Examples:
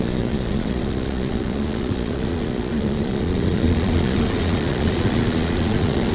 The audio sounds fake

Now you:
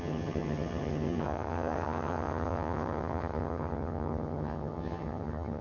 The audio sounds fake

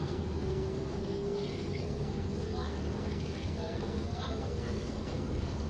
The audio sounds fake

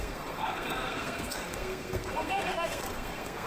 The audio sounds fake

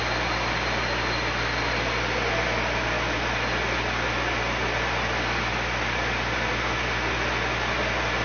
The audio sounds real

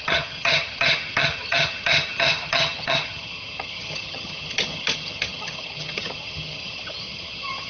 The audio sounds fake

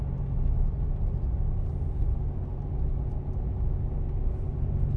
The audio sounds real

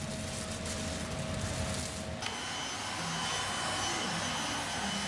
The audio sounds real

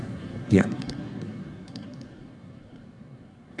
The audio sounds fake